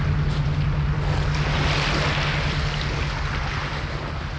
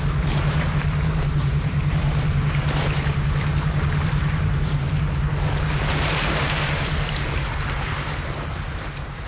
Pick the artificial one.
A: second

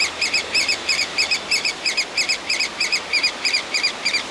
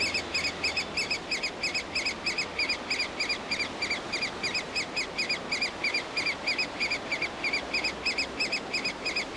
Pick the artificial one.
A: first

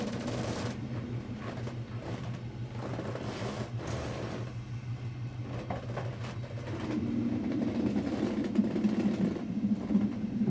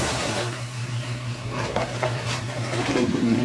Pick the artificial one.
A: second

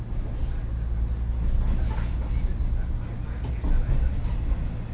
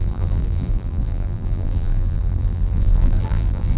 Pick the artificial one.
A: second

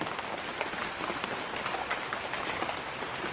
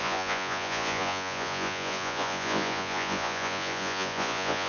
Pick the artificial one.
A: second